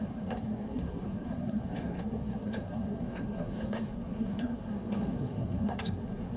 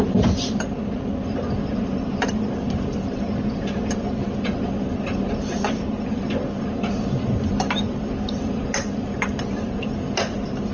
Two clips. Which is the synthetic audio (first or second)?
first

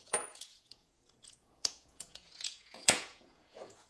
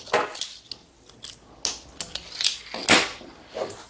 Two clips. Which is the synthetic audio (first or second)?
first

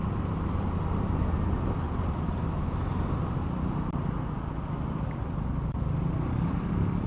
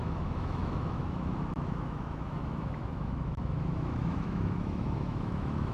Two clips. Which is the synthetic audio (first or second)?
second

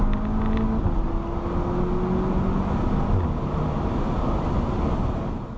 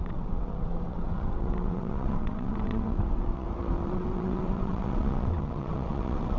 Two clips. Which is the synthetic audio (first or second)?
second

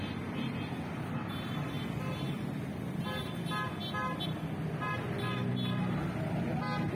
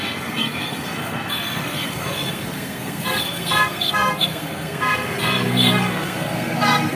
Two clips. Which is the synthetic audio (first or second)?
second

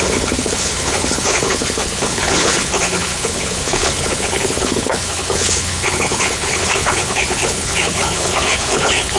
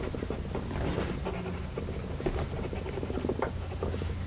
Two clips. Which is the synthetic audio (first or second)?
first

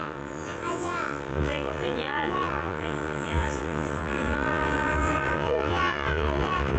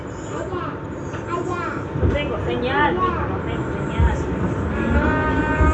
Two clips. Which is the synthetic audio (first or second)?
first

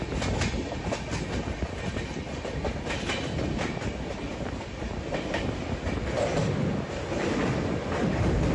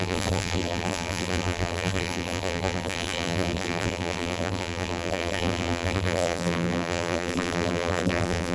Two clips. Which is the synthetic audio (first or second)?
second